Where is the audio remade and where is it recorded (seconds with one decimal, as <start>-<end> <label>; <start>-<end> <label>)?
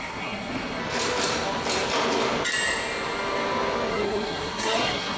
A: 0.0-0.8 remade; 0.8-3.9 recorded; 3.9-5.2 remade